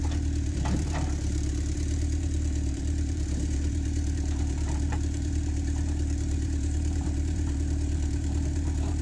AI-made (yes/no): yes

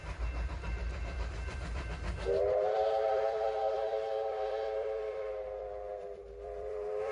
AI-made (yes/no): yes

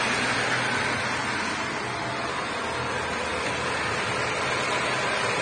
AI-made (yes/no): no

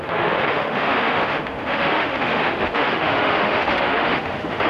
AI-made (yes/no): yes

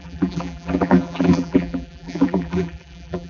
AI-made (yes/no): yes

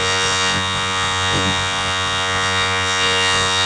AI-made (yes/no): yes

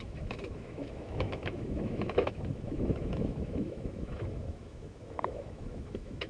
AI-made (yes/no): yes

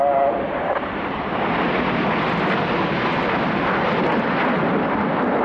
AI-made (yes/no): no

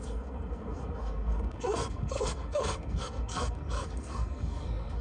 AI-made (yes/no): yes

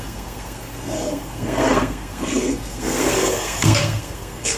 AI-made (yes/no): yes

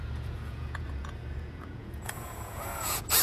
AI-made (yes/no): yes